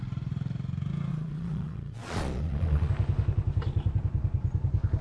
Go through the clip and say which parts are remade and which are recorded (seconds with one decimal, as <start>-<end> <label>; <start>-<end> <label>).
0.0-1.1 recorded; 1.1-2.9 remade; 2.9-5.0 recorded